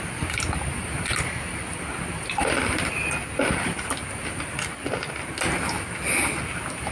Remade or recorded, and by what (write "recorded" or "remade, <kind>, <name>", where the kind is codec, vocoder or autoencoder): recorded